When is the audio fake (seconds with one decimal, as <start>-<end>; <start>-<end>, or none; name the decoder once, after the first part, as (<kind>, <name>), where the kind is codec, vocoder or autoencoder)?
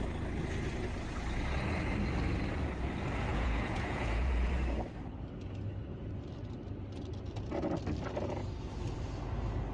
3.3-4.5 (vocoder, Vocos)